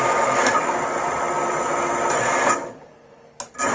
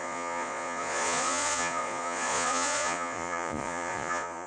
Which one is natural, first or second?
first